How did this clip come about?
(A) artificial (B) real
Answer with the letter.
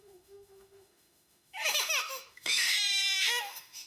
A